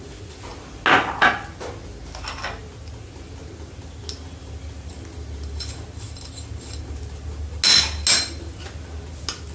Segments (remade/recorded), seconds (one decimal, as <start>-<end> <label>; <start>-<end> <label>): 0.0-9.5 recorded

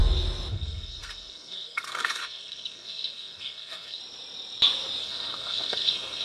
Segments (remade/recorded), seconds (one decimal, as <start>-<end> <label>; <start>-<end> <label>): 0.0-0.5 recorded; 0.5-4.0 remade; 4.0-5.0 recorded; 5.0-6.2 remade

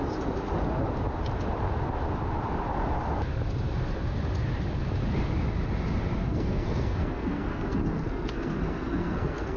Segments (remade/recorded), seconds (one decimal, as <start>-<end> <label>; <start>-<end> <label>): 0.0-6.2 recorded; 6.2-9.6 remade

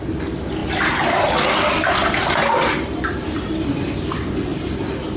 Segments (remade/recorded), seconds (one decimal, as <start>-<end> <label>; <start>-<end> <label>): 0.0-5.2 recorded

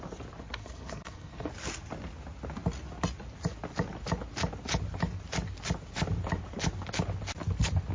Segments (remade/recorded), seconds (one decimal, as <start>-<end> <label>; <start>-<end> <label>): 0.0-0.6 recorded; 0.6-1.5 remade; 1.5-7.9 recorded